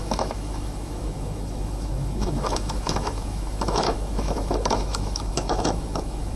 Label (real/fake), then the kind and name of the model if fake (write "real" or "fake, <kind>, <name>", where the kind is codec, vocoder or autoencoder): fake, autoencoder, DAC-VAE